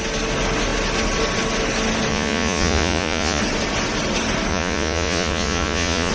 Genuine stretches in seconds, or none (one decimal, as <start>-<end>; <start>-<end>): 0.0-2.1; 3.4-4.5